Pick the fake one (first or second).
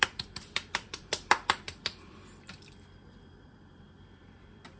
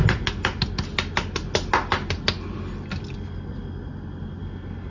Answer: first